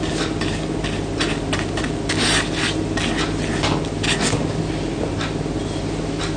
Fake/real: real